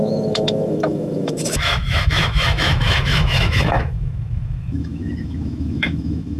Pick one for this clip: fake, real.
fake